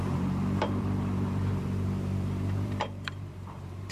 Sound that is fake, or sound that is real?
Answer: fake